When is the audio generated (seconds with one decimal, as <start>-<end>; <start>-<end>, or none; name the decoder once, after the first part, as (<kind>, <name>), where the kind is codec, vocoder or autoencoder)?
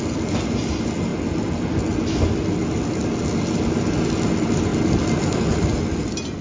none